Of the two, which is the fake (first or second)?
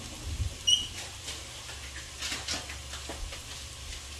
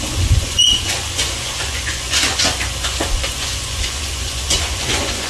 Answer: second